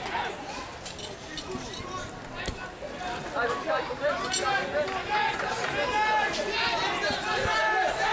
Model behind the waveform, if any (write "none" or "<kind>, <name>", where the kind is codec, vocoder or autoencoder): none